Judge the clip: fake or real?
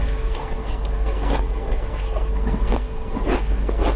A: fake